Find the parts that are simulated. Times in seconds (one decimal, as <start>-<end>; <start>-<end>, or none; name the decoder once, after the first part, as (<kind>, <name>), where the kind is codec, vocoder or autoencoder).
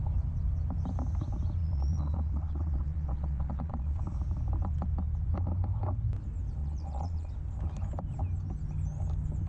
1.6-4.0 (vocoder, Vocos); 6.6-7.3